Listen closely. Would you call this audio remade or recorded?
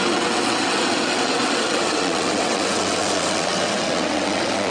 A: remade